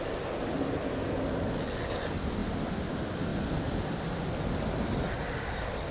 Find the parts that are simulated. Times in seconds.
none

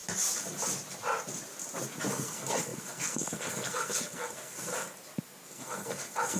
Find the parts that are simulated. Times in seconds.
2.1-4.7 (codec, SNAC); 5.5-6.4

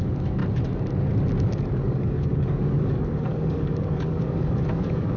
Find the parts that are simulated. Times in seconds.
0.0-0.4 (codec, DAC); 1.4-5.2

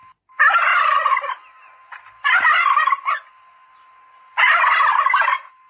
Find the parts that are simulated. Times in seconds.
none

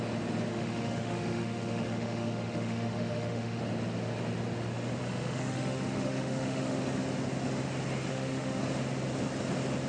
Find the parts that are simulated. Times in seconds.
0.5-3.6 (autoencoder, DAC-VAE); 5.0-6.8; 8.1-8.6